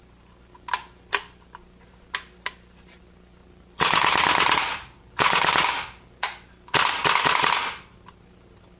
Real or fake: real